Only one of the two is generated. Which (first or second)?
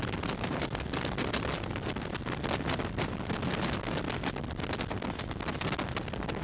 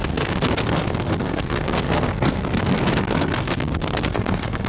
second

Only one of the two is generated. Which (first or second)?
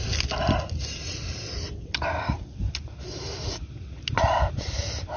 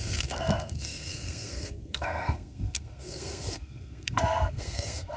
second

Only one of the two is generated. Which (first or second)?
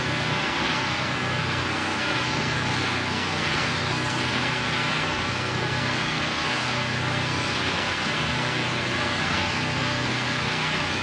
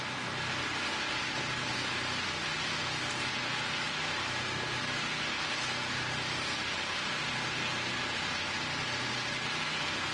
first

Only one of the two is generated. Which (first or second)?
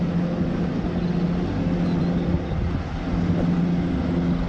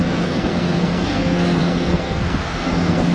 second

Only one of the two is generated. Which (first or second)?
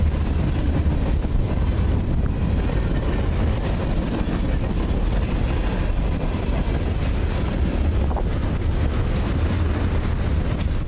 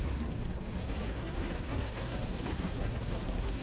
second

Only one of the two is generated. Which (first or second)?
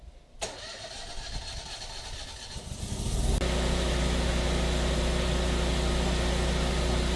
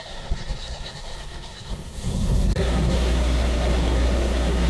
second